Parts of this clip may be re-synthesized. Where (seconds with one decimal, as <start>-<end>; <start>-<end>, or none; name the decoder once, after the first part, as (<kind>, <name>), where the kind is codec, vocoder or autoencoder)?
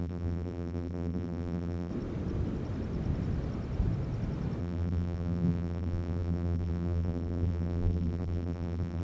0.0-1.9 (vocoder, BigVGAN v2); 4.6-9.0